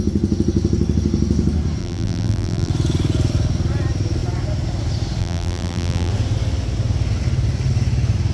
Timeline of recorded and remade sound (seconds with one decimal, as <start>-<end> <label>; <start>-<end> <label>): 0.0-1.8 recorded; 1.8-2.7 remade; 2.7-5.2 recorded; 5.2-6.1 remade; 6.1-8.3 recorded